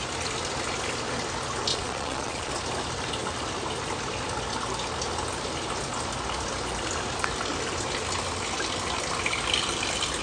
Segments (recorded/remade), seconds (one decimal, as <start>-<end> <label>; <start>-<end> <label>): 0.0-1.7 recorded; 1.7-2.5 remade; 2.5-10.2 recorded